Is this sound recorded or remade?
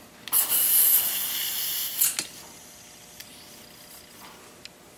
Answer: recorded